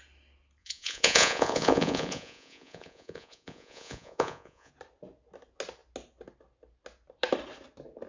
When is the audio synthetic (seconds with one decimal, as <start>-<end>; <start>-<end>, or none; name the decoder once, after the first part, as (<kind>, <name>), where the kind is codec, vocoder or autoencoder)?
0.6-4.7 (vocoder, Vocos)